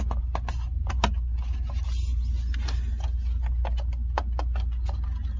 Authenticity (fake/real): real